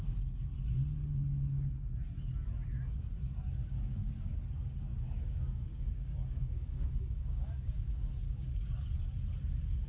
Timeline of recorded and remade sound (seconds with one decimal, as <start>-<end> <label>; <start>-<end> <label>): 0.0-3.6 recorded; 3.6-4.3 remade; 4.3-4.9 recorded; 4.9-8.8 remade; 8.8-9.9 recorded